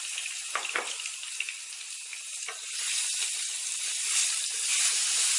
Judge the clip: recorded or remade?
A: remade